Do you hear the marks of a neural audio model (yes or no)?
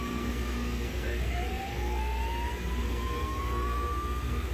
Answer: yes